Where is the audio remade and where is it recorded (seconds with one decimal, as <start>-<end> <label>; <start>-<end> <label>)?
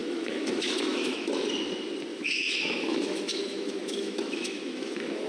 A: 0.0-1.3 remade; 1.3-2.1 recorded; 2.1-5.3 remade